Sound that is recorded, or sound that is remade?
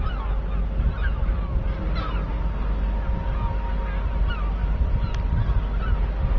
recorded